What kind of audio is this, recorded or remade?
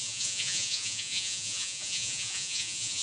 remade